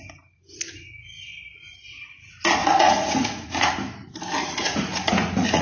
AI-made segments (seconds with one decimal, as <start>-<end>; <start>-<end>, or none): 2.6-3.7; 4.4-5.6